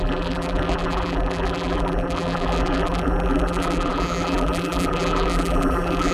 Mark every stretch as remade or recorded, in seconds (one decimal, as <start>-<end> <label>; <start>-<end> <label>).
0.0-6.1 remade